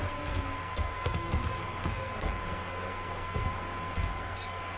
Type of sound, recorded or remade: remade